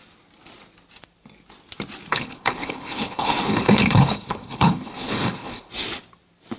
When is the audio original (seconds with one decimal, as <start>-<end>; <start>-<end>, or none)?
0.0-2.1; 5.7-6.6